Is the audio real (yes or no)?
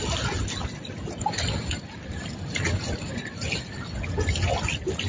yes